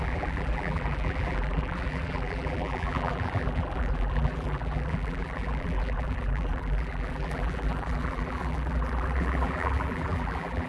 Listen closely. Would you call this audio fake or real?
fake